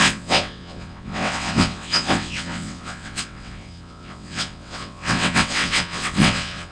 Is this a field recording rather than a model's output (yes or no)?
no